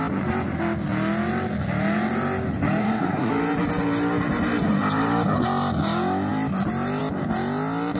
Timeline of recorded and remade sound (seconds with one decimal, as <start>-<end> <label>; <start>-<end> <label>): 0.0-2.8 recorded; 2.8-3.3 remade; 3.3-8.0 recorded